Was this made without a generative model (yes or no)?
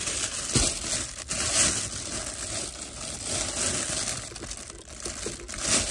yes